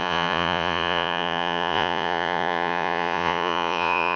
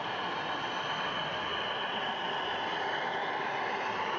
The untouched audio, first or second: second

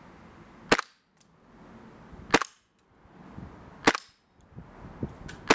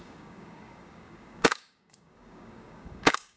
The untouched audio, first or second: first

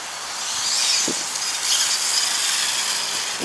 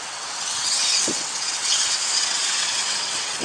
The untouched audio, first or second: first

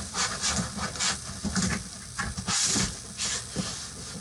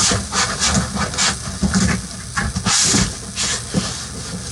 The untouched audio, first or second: second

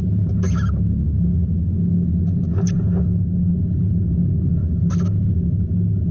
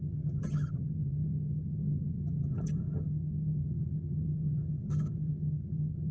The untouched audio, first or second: first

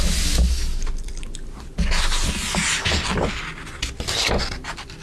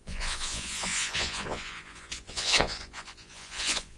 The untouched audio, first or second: first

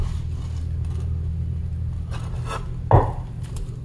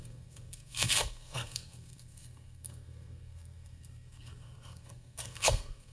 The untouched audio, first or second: first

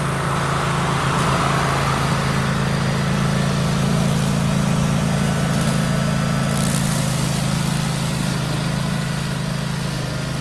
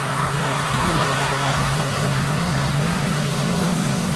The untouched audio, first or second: first